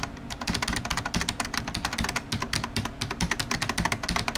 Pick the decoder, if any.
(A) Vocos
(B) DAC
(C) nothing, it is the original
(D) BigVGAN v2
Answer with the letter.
C